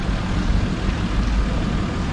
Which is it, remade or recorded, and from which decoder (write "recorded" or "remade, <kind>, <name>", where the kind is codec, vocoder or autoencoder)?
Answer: recorded